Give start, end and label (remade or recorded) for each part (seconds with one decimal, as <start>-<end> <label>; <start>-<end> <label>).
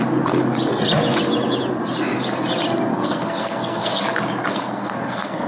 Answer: 0.0-2.9 recorded; 2.9-4.0 remade; 4.0-4.5 recorded; 4.5-5.5 remade